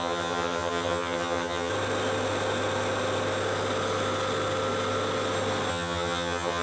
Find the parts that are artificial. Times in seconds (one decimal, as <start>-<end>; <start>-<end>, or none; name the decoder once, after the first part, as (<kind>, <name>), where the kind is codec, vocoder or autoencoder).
0.0-1.7 (vocoder, HiFi-GAN); 5.7-6.6